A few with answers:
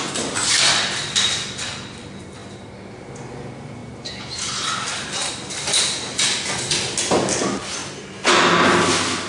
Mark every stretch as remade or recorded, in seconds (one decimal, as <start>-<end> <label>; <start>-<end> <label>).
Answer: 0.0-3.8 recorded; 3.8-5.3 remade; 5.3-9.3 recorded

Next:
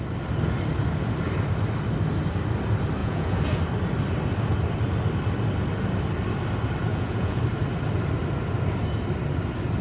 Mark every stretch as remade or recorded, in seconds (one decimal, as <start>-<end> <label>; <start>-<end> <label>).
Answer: 0.0-3.0 recorded; 3.0-3.6 remade; 3.6-6.9 recorded; 6.9-7.4 remade; 7.4-9.8 recorded

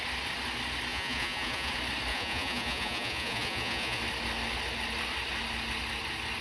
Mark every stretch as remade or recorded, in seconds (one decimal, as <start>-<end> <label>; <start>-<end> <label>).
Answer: 0.0-0.9 recorded; 0.9-1.7 remade; 1.7-2.1 recorded; 2.1-4.0 remade; 4.0-6.4 recorded

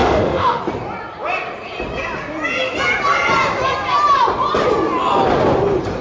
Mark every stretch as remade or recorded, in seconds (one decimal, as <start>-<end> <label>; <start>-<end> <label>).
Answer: 0.0-0.6 remade; 0.6-6.0 recorded

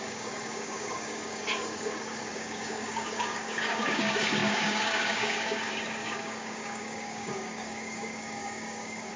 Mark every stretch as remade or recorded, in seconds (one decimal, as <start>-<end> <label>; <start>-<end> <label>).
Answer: 0.0-9.2 remade

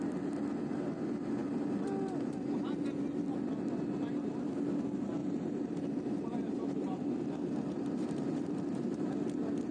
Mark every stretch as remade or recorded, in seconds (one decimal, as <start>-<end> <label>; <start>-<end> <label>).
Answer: 0.0-5.2 recorded; 5.2-9.1 remade; 9.1-9.7 recorded

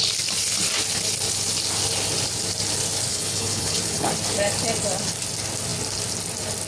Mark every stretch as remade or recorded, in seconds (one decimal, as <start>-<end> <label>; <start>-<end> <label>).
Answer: 0.0-3.1 recorded; 3.1-4.1 remade; 4.1-6.7 recorded

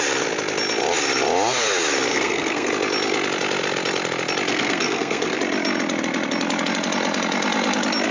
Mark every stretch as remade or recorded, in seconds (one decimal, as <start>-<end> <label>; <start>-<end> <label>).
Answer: 0.0-2.1 recorded; 2.1-2.7 remade; 2.7-4.5 recorded; 4.5-5.4 remade; 5.4-8.1 recorded